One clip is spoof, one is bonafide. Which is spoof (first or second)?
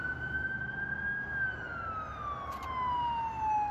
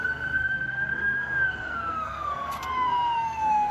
second